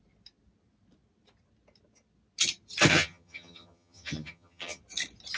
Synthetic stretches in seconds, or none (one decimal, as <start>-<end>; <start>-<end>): 2.9-4.8